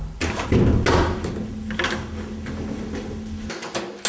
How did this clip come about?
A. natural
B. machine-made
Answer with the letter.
A